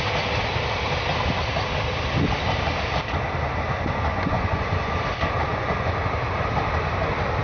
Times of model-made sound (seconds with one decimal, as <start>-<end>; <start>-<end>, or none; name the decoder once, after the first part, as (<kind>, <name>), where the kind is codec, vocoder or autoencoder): 4.1-4.9 (vocoder, Vocos); 5.5-6.0